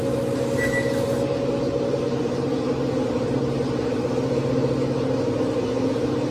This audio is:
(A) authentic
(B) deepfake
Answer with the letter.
A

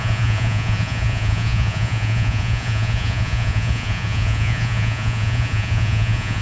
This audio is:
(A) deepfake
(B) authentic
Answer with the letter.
A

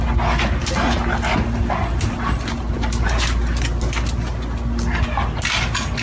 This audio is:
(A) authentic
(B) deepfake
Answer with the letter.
A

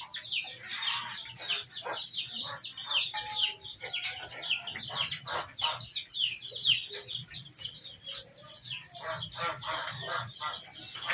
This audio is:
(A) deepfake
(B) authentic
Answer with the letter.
B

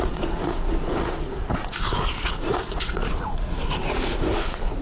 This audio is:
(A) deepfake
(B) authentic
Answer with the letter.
A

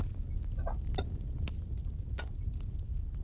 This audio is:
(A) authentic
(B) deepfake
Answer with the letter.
A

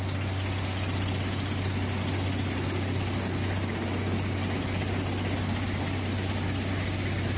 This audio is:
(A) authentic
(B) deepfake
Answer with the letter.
A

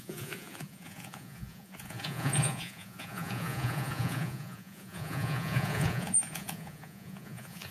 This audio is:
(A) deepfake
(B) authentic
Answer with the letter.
A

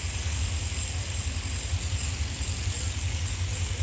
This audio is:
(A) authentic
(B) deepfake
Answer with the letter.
A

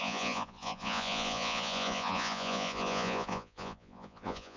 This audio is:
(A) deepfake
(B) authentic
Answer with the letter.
A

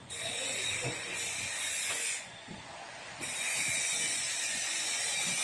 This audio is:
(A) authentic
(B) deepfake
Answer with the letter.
B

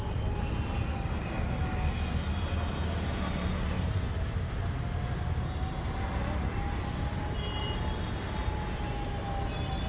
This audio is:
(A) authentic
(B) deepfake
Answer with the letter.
A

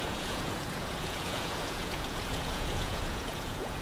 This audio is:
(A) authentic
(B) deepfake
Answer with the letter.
B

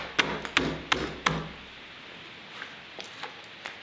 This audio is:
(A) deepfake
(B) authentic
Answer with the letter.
B